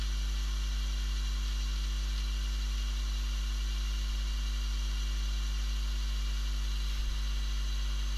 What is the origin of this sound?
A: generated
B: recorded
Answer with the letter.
B